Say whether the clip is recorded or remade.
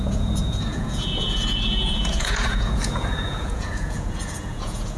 remade